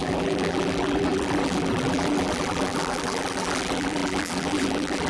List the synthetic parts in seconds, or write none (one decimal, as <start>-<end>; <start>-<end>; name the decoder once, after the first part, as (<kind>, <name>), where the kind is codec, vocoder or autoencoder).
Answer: 0.0-5.1 (vocoder, BigVGAN v2)